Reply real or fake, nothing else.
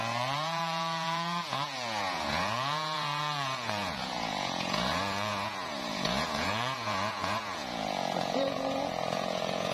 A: fake